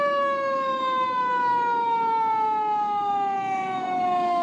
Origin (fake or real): fake